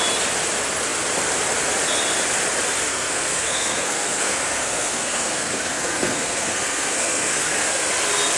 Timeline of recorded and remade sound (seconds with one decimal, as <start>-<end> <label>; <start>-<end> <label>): 0.0-2.9 recorded; 2.9-7.9 remade; 7.9-8.4 recorded